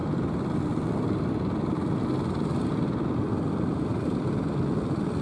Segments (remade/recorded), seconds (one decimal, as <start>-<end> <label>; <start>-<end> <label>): 0.0-5.2 recorded